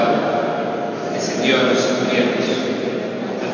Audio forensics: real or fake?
real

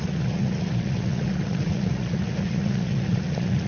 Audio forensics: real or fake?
fake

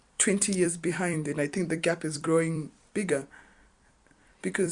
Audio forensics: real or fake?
fake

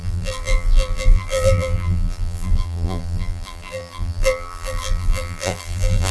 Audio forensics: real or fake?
fake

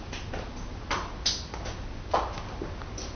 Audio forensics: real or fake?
real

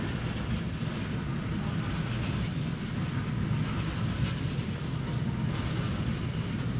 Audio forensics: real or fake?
real